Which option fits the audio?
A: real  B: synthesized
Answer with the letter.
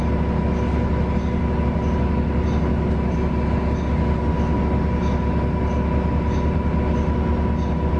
A